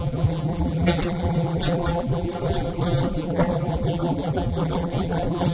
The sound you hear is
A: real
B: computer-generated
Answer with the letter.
B